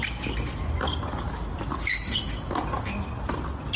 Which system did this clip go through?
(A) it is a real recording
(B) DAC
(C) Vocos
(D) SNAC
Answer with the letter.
A